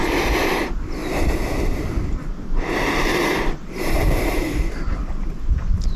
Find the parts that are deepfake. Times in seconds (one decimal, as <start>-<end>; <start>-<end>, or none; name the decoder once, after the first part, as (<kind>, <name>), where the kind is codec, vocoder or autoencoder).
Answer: 0.0-6.0 (vocoder, BigVGAN v2)